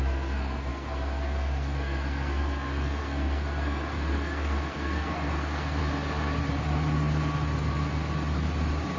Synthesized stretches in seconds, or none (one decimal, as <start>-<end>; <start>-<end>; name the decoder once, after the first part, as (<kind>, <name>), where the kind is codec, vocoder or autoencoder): 0.0-5.8 (codec, SNAC)